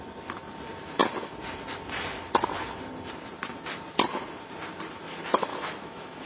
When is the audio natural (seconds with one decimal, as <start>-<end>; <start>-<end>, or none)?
0.0-5.5

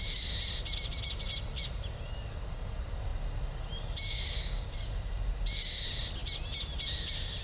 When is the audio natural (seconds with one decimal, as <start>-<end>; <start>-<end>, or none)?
0.0-7.4

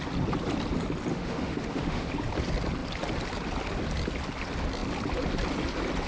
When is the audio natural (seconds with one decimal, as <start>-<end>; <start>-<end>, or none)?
0.0-1.1; 2.1-6.1

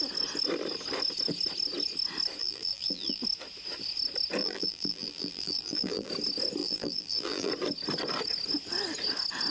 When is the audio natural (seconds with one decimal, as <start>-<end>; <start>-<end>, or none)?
0.0-2.4; 3.2-4.4; 6.1-6.6; 7.5-9.5